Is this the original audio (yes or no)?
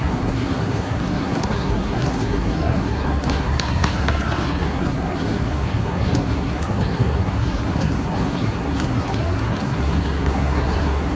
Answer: no